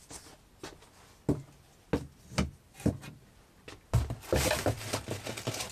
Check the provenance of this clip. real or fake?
real